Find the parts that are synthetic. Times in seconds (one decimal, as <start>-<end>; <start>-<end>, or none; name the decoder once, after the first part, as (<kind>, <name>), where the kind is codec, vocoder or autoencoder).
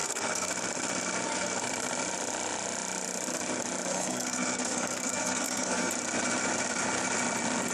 0.0-0.5 (codec, SNAC); 3.9-5.9